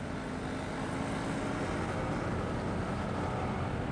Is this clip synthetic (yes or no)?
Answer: no